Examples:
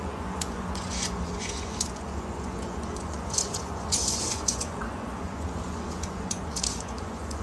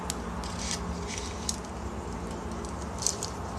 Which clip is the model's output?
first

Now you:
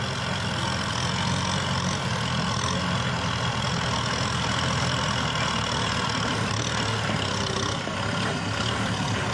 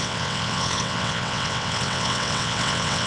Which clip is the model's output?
second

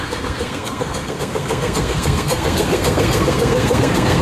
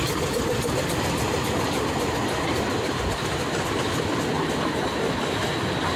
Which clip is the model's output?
first